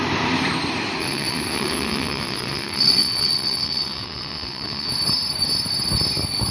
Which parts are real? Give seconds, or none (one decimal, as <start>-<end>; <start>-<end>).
0.0-1.0; 4.9-6.5